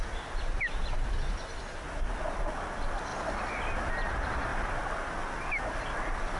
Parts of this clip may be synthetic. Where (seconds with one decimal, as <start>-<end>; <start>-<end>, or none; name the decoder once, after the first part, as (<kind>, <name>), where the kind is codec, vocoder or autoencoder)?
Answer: none